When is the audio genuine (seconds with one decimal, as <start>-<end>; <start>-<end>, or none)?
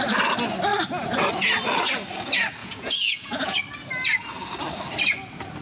0.0-2.6; 3.6-5.6